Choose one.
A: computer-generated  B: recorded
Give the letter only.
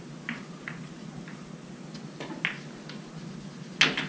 B